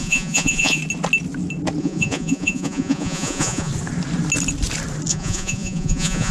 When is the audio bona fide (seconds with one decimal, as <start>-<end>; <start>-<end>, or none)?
0.8-1.8; 3.7-5.1